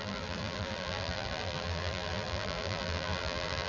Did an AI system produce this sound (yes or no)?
yes